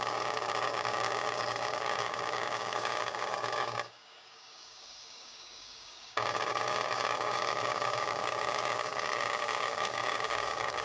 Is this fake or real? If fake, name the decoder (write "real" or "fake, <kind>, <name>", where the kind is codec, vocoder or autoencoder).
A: fake, codec, DAC